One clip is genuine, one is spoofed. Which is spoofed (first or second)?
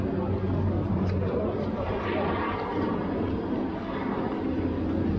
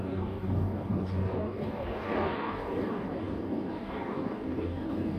second